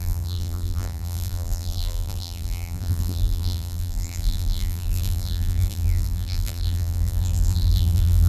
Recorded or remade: remade